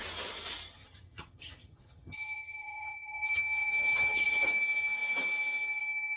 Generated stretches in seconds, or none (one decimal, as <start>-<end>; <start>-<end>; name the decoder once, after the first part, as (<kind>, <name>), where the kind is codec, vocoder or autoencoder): 0.8-4.5 (vocoder, HiFi-GAN)